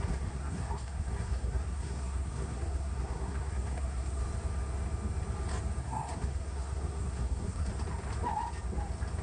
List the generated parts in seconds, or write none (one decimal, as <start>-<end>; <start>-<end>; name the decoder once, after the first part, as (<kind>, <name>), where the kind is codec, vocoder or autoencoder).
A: 0.0-4.2 (codec, SNAC); 5.8-7.7